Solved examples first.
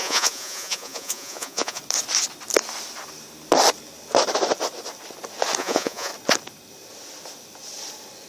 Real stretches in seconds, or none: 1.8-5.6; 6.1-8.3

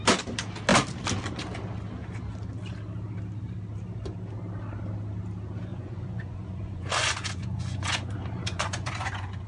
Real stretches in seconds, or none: 0.0-5.7

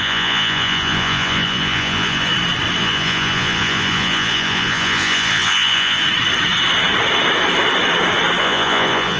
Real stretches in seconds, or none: 2.3-2.8; 6.0-8.4

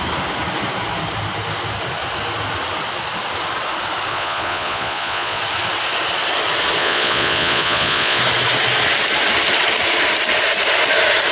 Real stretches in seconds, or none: 0.0-4.1; 5.4-6.8; 8.2-11.3

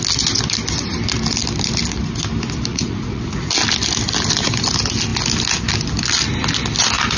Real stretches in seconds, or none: 0.0-2.7; 3.5-7.2

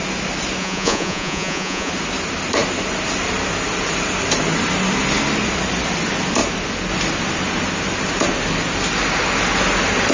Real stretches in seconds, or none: 0.0-0.6; 1.9-10.1

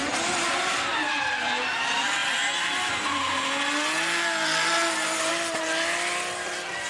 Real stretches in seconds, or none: 0.0-6.9